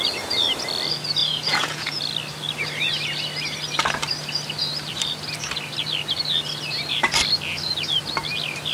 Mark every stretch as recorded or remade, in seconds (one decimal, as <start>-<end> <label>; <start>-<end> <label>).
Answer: 0.0-1.2 recorded; 1.2-2.0 remade; 2.0-8.7 recorded

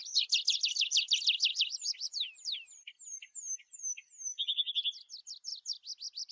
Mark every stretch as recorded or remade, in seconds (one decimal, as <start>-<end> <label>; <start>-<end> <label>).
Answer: 0.0-3.8 remade; 3.8-6.3 recorded

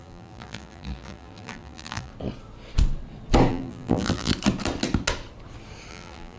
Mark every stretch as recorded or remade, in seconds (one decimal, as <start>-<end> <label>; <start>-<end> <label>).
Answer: 0.0-2.1 remade; 2.1-3.5 recorded; 3.5-4.3 remade; 4.3-5.9 recorded; 5.9-6.4 remade

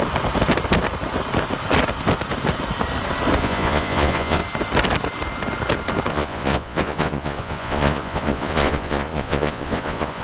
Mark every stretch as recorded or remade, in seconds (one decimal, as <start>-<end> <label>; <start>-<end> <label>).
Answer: 0.0-3.4 recorded; 3.4-4.4 remade; 4.4-6.1 recorded; 6.1-10.2 remade

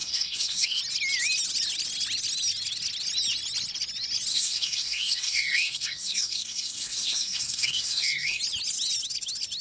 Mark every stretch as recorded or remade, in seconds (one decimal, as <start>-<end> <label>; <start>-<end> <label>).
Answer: 0.0-0.8 remade; 0.8-4.3 recorded; 4.3-8.4 remade; 8.4-9.6 recorded

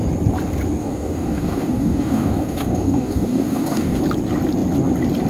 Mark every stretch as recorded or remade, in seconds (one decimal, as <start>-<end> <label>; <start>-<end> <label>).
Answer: 0.0-0.8 recorded; 0.8-4.0 remade; 4.0-5.3 recorded

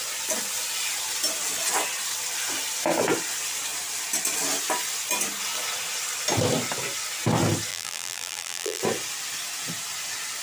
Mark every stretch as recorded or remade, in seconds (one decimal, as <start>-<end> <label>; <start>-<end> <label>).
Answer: 0.0-7.7 recorded; 7.7-8.8 remade; 8.8-10.4 recorded

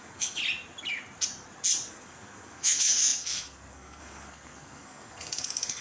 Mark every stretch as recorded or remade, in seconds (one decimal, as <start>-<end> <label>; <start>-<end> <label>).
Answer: 0.0-0.4 remade; 0.4-1.9 recorded; 1.9-5.8 remade